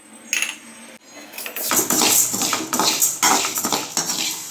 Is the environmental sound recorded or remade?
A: recorded